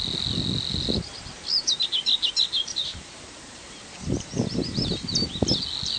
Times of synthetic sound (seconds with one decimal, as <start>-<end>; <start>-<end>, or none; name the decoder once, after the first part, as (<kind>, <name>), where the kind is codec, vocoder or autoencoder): 2.6-5.3 (vocoder, BigVGAN v2)